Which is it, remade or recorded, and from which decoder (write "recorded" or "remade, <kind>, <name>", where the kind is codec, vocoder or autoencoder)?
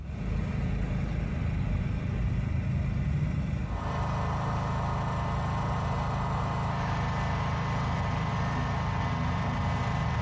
recorded